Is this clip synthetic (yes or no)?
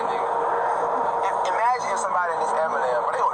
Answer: no